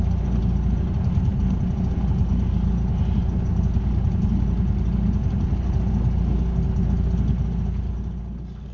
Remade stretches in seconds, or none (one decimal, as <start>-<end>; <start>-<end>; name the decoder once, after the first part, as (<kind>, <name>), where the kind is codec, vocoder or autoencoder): none